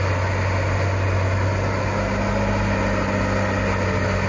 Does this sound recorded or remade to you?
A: recorded